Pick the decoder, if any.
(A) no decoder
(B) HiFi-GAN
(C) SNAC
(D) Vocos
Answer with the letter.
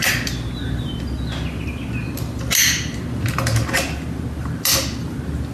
A